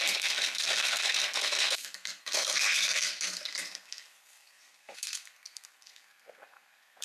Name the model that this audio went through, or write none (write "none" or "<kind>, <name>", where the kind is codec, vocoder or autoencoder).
codec, SNAC